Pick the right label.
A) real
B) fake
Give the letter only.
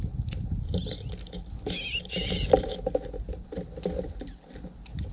A